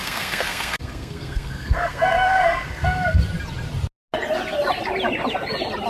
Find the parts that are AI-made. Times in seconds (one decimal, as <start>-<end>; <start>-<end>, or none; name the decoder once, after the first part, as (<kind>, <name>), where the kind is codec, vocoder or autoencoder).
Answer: 0.0-3.2 (codec, SNAC)